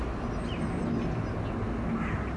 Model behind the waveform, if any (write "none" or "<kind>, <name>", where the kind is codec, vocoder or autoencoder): none